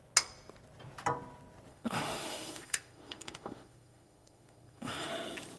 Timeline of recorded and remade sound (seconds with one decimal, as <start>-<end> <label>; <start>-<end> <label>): 0.0-1.7 recorded; 1.7-5.1 remade; 5.1-5.6 recorded

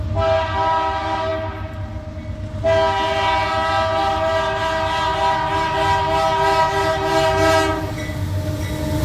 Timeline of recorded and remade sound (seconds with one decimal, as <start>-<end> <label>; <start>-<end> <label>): 0.0-9.0 recorded

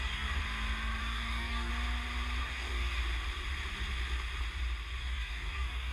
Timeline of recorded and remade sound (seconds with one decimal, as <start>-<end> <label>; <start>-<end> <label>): 0.0-0.4 remade; 0.4-1.0 recorded; 1.0-1.7 remade; 1.7-2.4 recorded; 2.4-3.0 remade; 3.0-5.0 recorded; 5.0-5.9 remade